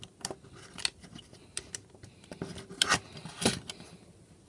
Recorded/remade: recorded